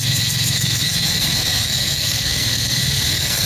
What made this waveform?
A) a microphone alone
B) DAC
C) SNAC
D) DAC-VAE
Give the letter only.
C